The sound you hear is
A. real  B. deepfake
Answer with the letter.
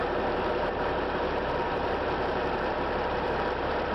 B